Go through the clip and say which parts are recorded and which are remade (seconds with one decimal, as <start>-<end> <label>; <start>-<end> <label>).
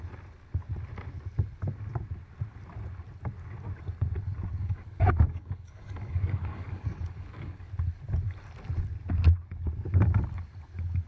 0.0-4.6 recorded; 4.6-7.7 remade; 7.7-11.1 recorded